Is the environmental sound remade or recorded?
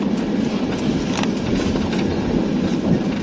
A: recorded